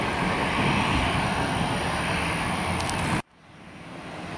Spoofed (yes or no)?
no